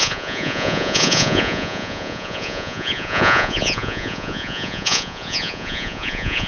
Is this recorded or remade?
remade